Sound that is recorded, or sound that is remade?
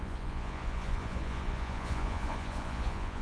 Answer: remade